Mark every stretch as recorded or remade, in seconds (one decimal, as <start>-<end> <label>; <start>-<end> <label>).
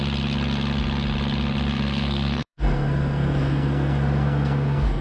0.0-1.7 recorded; 1.7-5.0 remade